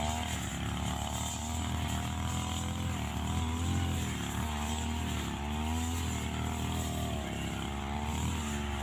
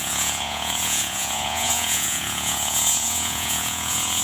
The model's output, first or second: second